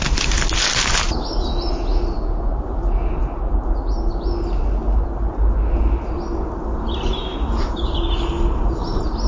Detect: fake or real real